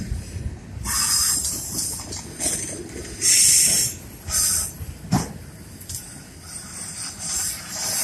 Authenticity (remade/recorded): recorded